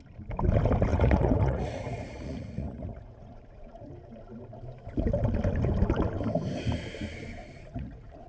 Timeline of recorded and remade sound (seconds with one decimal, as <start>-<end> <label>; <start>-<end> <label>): 0.0-0.9 recorded; 0.9-3.9 remade; 3.9-7.4 recorded; 7.4-8.3 remade

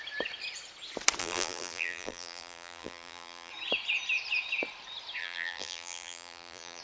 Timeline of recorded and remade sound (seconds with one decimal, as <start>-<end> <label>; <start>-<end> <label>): 0.0-1.2 recorded; 1.2-3.5 remade; 3.5-5.2 recorded; 5.2-6.8 remade

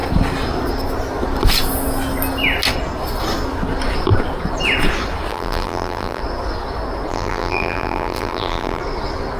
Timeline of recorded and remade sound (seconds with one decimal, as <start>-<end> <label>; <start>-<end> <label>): 0.0-5.3 recorded; 5.3-6.2 remade; 6.2-7.1 recorded; 7.1-8.8 remade; 8.8-9.4 recorded

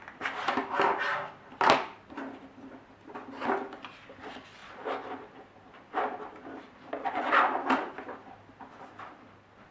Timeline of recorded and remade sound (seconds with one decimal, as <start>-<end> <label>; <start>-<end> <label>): 0.0-9.7 recorded

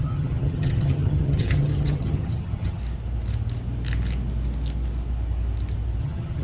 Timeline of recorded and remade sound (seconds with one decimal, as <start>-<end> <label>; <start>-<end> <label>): 0.0-2.8 remade; 2.8-6.0 recorded; 6.0-6.4 remade